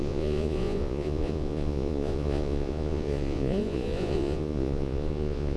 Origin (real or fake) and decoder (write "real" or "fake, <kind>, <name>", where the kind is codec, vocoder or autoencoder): fake, vocoder, Vocos